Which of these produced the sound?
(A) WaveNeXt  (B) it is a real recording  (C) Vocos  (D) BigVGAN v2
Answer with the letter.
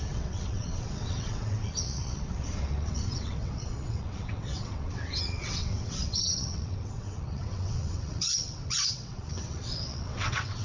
A